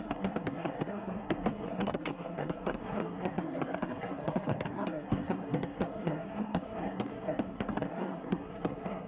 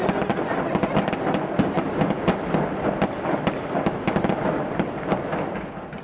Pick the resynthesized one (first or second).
first